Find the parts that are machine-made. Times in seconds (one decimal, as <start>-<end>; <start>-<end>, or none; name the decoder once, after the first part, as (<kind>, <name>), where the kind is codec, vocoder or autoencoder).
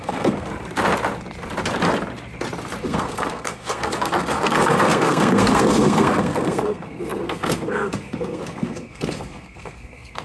0.0-0.5 (codec, SNAC); 2.8-10.2